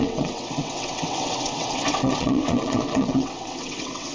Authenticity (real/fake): fake